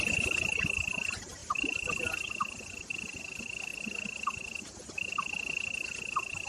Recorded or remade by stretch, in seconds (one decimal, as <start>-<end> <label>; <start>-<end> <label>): 0.0-6.5 recorded